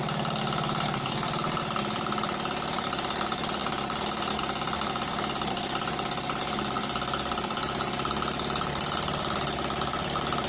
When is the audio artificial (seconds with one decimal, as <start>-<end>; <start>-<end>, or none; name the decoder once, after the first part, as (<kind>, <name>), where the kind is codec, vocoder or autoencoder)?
none